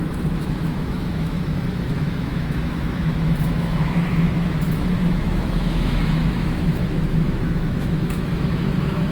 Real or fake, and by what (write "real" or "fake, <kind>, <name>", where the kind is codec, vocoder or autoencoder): fake, autoencoder, DAC-VAE